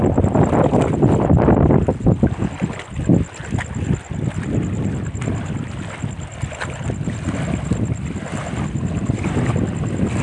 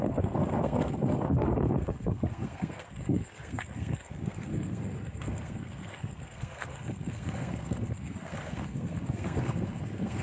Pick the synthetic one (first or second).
second